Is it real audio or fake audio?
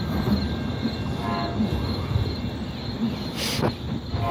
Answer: real